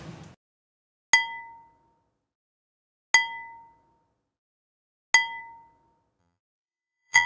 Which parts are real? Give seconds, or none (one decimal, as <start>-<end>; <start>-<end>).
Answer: 0.0-6.2